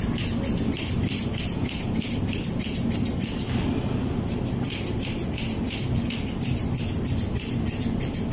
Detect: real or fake real